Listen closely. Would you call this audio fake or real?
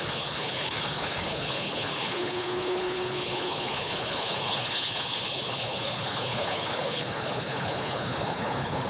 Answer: fake